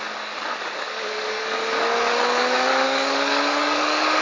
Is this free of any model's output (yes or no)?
no